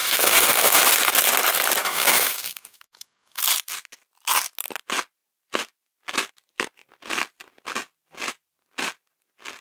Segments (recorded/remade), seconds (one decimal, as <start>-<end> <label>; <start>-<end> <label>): 0.0-0.8 remade; 0.8-1.8 recorded; 1.8-3.4 remade; 3.4-9.6 recorded